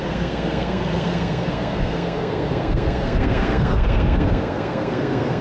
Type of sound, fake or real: fake